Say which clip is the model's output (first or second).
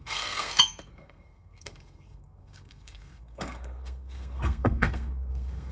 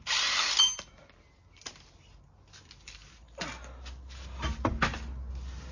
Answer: first